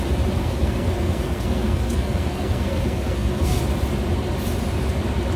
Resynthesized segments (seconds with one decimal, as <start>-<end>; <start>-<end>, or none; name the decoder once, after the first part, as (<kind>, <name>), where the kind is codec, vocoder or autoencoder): 0.4-3.6 (codec, SNAC)